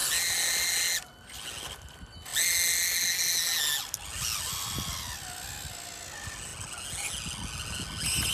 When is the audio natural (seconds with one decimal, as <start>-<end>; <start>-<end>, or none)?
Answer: 0.0-8.3